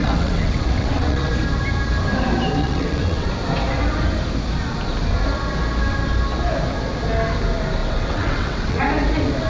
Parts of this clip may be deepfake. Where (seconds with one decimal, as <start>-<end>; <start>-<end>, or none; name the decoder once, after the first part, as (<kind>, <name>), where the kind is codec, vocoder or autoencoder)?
0.0-1.3 (vocoder, WaveNeXt); 2.6-3.3; 7.8-8.8